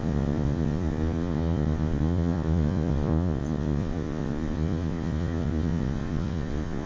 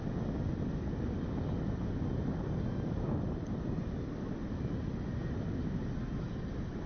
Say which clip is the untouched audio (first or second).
second